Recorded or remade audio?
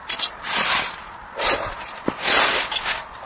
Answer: recorded